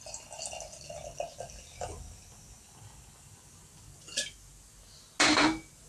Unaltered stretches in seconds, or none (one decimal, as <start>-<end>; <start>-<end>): 0.0-5.9